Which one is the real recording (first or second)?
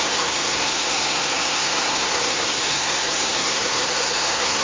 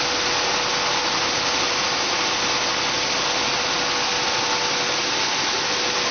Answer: second